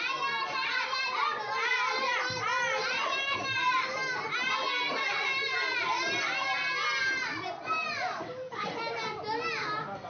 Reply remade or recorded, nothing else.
recorded